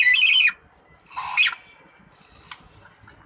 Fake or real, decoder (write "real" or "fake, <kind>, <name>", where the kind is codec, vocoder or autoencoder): real